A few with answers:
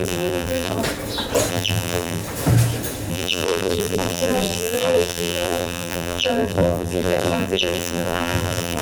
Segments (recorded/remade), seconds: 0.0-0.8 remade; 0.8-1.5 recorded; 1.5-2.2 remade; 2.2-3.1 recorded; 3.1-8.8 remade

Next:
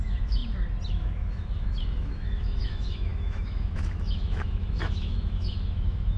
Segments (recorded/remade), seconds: 0.0-0.4 remade; 0.4-0.9 recorded; 0.9-6.2 remade

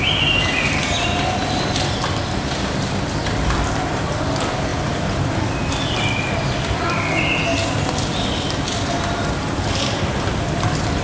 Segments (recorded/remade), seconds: 0.0-11.0 recorded